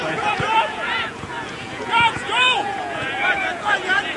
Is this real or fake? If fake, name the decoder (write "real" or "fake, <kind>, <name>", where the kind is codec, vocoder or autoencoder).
fake, vocoder, Vocos